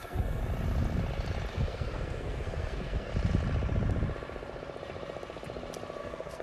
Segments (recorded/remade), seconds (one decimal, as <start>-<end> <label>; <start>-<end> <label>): 0.0-0.4 remade; 0.4-1.5 recorded; 1.5-3.1 remade; 3.1-6.0 recorded; 6.0-6.4 remade